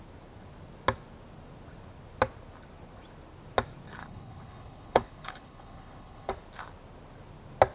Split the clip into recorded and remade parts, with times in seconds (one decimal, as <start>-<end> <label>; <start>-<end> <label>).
0.0-4.0 recorded; 4.0-6.3 remade; 6.3-7.7 recorded